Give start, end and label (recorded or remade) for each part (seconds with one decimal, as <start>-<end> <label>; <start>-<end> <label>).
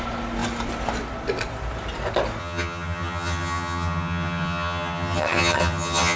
0.0-2.4 recorded; 2.4-6.2 remade